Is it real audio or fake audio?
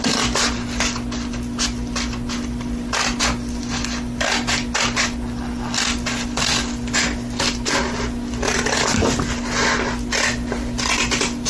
real